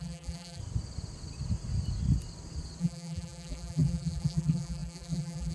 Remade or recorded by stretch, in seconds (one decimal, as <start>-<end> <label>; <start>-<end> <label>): 0.0-0.6 remade; 0.6-2.8 recorded; 2.8-5.5 remade